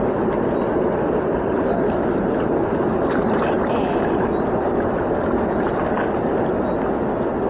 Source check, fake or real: real